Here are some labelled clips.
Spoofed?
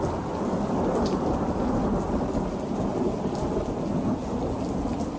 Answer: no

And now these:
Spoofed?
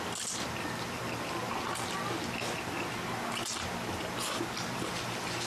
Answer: no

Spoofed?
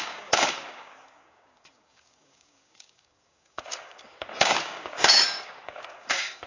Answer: yes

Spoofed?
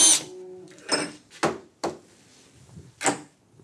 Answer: no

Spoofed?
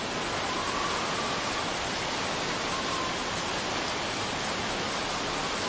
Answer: no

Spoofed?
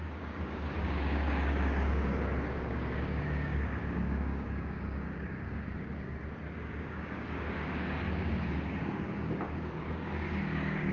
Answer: yes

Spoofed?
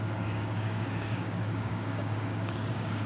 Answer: yes